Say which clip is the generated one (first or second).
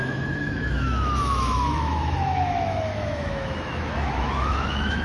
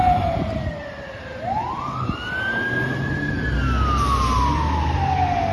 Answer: first